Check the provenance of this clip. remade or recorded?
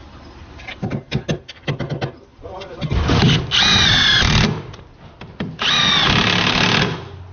recorded